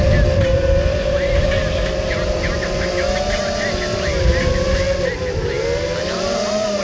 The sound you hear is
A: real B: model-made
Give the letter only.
A